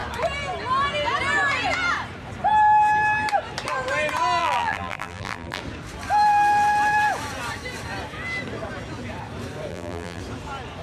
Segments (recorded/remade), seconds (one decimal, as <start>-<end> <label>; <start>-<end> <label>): 0.0-4.4 recorded; 4.4-5.6 remade; 5.6-9.7 recorded; 9.7-10.2 remade; 10.2-10.8 recorded